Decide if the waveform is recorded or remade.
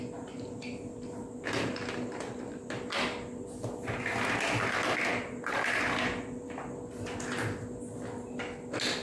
recorded